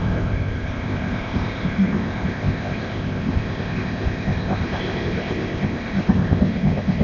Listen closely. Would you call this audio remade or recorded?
remade